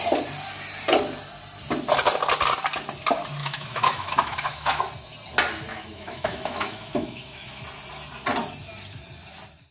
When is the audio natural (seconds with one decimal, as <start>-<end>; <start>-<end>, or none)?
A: 0.0-3.4; 4.8-5.7; 7.6-9.7